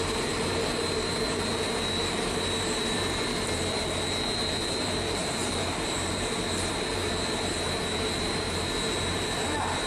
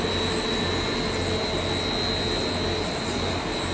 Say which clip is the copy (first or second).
first